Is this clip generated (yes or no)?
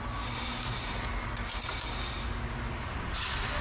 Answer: no